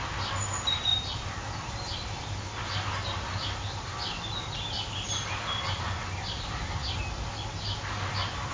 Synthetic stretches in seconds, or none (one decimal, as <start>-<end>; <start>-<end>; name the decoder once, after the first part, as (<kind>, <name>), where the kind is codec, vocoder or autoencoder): none